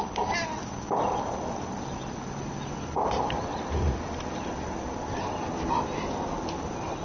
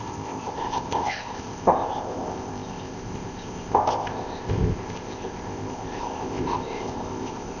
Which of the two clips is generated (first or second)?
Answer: second